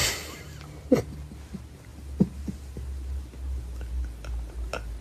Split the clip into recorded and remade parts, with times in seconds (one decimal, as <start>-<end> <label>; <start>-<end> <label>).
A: 0.0-5.0 recorded